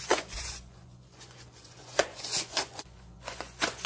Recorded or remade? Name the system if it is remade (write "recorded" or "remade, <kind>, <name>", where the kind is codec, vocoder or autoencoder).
remade, vocoder, Vocos